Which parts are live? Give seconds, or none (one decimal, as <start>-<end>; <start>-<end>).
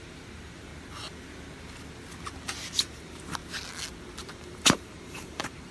0.7-2.8; 3.4-4.2